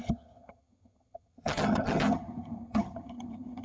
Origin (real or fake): fake